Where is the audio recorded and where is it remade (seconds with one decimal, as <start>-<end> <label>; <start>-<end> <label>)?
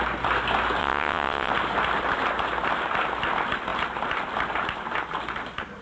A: 0.0-0.8 recorded; 0.8-1.5 remade; 1.5-5.8 recorded